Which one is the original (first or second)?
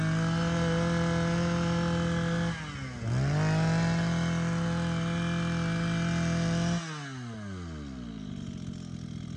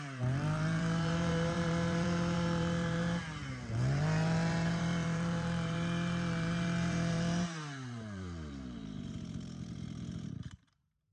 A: first